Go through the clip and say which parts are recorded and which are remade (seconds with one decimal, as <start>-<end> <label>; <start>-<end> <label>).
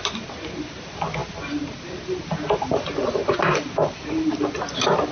0.0-3.2 recorded; 3.2-3.7 remade; 3.7-5.1 recorded